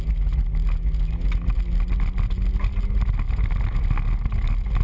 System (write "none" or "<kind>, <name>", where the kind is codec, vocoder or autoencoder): none